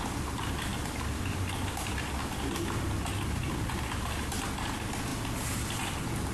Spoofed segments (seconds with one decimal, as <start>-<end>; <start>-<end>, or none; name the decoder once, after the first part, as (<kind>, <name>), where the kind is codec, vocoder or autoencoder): none